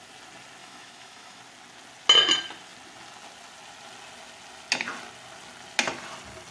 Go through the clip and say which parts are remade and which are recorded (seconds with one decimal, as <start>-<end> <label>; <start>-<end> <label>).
0.0-0.6 recorded; 0.6-1.4 remade; 1.4-6.5 recorded